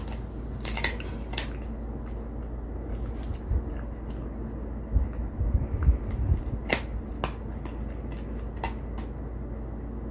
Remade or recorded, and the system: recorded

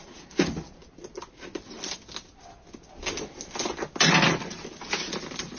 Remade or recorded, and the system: recorded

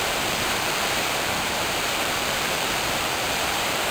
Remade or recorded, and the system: remade, vocoder, BigVGAN v2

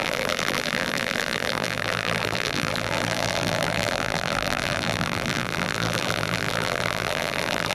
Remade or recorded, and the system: remade, vocoder, BigVGAN v2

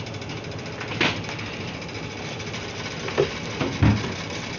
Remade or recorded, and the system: recorded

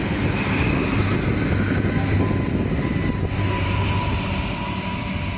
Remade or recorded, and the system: recorded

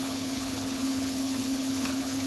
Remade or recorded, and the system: remade, codec, HILCodec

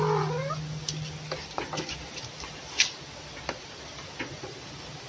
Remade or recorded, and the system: recorded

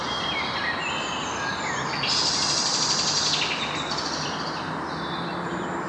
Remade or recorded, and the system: recorded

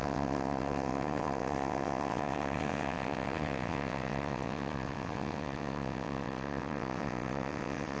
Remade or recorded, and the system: remade, vocoder, WaveNeXt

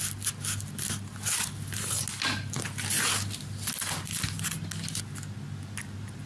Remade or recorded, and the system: recorded